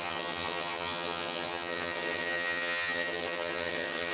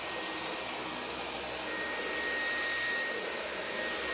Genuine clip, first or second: second